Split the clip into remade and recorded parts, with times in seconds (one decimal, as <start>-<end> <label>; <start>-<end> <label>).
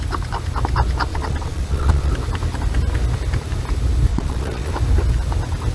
0.0-1.1 recorded; 1.1-2.1 remade; 2.1-4.1 recorded; 4.1-4.7 remade; 4.7-5.7 recorded